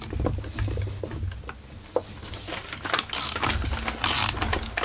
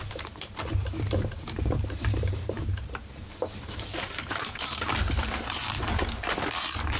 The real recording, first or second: first